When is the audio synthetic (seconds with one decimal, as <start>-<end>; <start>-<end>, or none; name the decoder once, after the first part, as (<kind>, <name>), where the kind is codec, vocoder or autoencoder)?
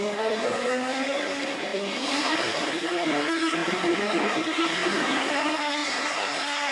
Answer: 0.0-6.7 (codec, SNAC)